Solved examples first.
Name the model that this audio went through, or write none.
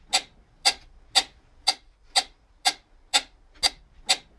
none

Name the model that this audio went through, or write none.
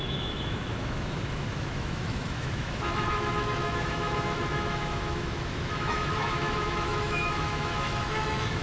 autoencoder, DAC-VAE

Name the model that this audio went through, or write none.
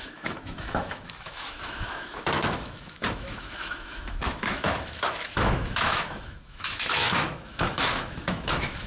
autoencoder, DAC-VAE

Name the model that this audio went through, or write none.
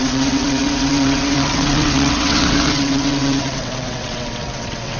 vocoder, WaveNeXt